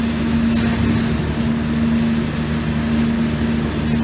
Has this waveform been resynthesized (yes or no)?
no